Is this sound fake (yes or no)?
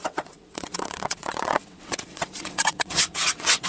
yes